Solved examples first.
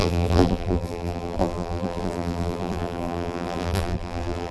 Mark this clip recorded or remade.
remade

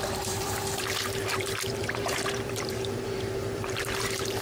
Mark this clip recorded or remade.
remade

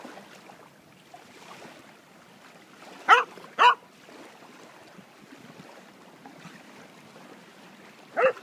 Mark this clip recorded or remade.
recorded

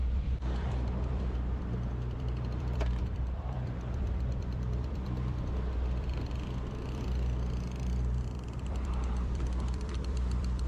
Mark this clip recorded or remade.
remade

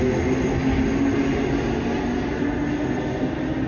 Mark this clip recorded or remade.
recorded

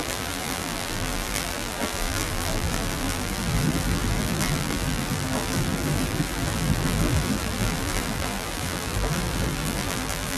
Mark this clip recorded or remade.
remade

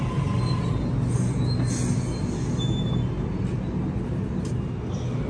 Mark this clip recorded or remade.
recorded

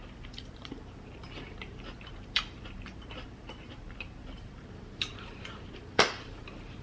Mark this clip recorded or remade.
remade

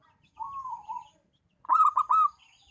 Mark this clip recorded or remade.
recorded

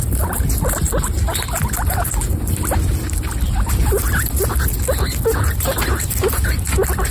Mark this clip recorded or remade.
recorded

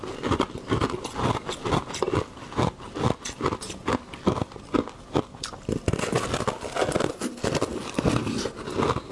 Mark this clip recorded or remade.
recorded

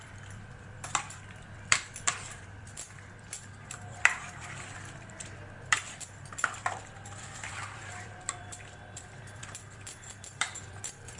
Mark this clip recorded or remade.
remade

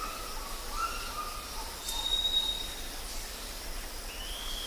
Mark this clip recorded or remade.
recorded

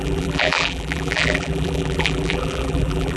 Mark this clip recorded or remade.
remade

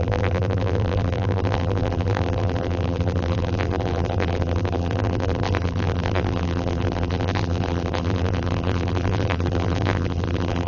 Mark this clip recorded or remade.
remade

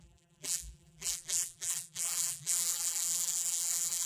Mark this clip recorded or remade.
remade